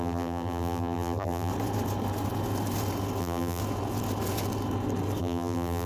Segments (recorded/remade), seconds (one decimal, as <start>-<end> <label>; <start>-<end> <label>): 0.0-1.5 remade; 1.5-3.2 recorded; 3.2-3.6 remade; 3.6-5.2 recorded; 5.2-5.9 remade